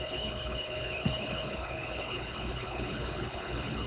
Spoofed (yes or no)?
yes